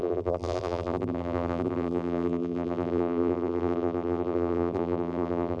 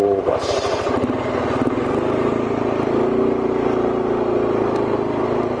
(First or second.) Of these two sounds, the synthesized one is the first